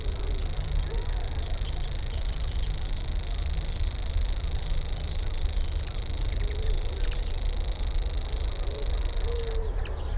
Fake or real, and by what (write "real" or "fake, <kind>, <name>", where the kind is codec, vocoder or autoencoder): real